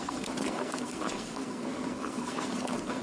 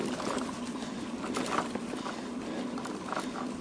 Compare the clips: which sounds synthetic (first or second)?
first